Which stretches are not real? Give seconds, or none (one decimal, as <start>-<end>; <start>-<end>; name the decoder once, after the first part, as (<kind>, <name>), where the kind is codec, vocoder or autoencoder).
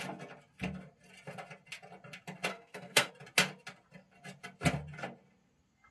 2.5-3.1 (codec, SNAC)